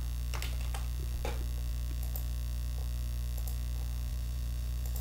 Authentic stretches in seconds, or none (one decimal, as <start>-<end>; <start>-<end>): 0.0-4.1